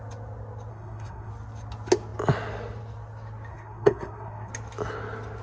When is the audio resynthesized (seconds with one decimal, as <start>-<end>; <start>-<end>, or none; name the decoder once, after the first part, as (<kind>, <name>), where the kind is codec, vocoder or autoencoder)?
0.7-1.3 (codec, SNAC); 3.5-4.5